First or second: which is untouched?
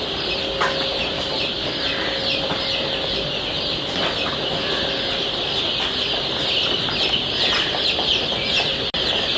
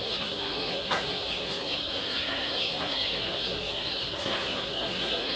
first